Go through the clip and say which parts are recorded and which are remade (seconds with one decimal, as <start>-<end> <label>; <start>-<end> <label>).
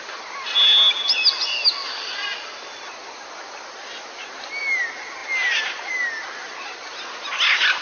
0.0-7.8 recorded